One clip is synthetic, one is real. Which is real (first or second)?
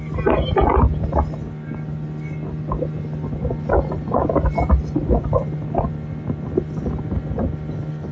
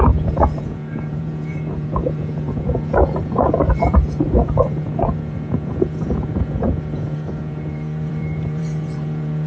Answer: first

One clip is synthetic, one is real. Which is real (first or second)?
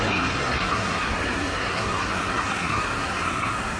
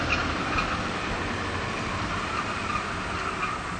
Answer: second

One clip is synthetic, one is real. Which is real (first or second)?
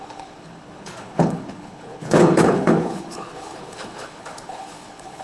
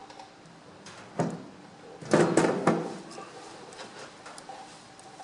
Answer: second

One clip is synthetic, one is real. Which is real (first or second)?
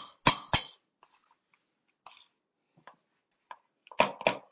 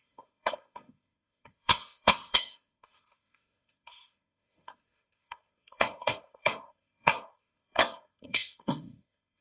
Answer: first